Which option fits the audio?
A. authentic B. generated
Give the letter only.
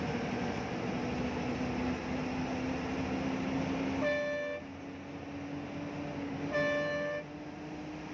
A